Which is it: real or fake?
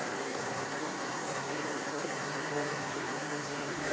fake